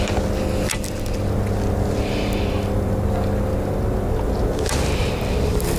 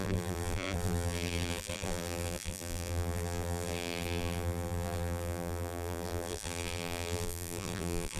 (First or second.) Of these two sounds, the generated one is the second